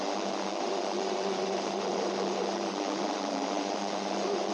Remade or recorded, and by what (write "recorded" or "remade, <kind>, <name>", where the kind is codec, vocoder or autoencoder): remade, vocoder, BigVGAN v2